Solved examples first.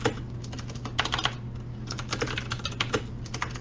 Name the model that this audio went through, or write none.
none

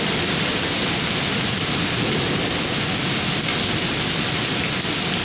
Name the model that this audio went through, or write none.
none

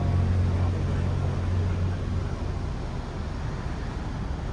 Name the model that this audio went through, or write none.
none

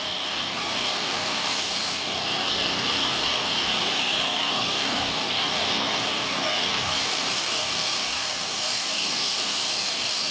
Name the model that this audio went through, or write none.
codec, DAC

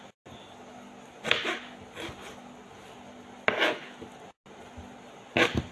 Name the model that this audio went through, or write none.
none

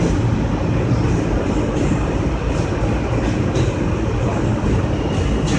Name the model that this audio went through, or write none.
none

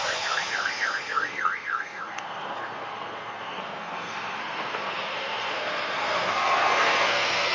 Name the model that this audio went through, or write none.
codec, SNAC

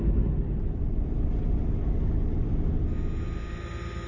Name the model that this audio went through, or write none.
none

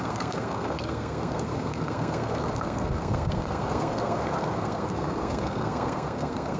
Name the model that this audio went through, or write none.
codec, SNAC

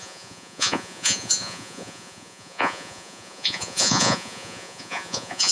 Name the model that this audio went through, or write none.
vocoder, Vocos